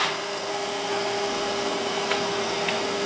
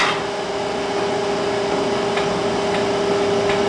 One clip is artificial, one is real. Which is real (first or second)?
second